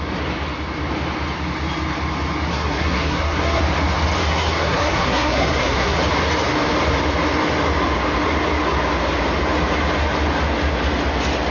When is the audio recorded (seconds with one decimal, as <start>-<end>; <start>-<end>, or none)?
0.0-2.5; 3.6-4.2; 6.0-11.5